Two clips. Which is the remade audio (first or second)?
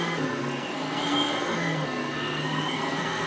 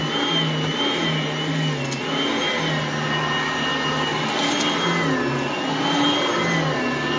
first